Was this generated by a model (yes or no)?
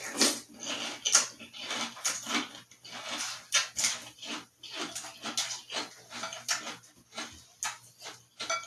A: no